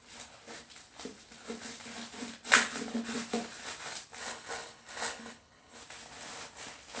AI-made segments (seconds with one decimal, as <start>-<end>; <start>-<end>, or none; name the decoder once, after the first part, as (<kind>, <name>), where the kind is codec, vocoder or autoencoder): 4.2-5.8 (codec, HILCodec)